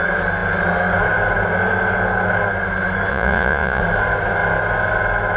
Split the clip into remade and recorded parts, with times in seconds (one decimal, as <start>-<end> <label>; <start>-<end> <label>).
0.0-3.1 recorded; 3.1-3.8 remade; 3.8-5.4 recorded